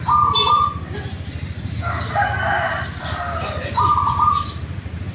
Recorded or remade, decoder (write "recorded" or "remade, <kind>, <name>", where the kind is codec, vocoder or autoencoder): recorded